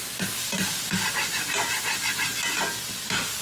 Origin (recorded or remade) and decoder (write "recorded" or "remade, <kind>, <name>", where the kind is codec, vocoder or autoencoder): recorded